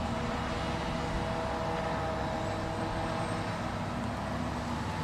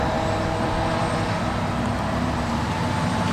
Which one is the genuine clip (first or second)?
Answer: first